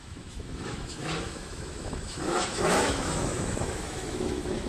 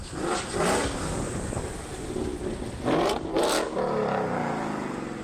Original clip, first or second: second